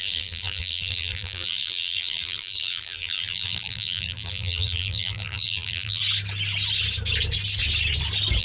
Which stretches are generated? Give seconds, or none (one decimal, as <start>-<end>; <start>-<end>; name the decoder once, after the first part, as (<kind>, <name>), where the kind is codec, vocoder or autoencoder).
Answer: 0.0-6.0 (vocoder, BigVGAN v2)